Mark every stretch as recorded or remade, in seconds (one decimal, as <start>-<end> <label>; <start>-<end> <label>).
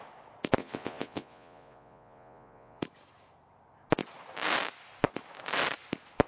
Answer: 0.0-0.6 recorded; 0.6-2.8 remade; 2.8-6.3 recorded